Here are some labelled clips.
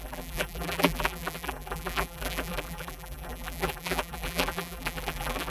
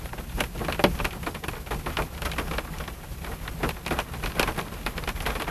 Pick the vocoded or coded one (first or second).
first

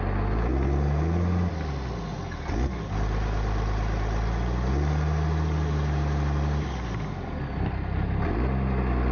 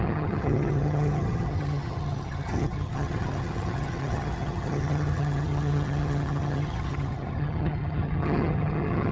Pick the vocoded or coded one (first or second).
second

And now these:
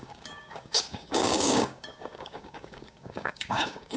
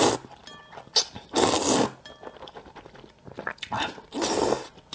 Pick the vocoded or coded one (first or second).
first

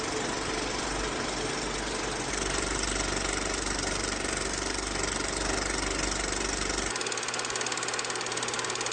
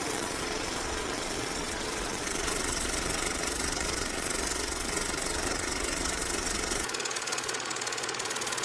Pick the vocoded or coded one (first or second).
second